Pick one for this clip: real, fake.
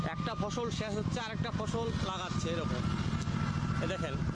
real